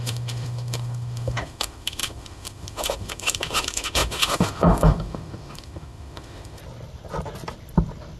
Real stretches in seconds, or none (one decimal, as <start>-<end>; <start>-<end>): 6.6-8.2